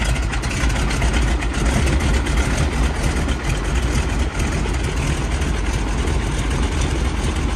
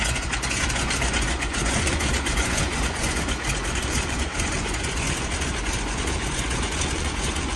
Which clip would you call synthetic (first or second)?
second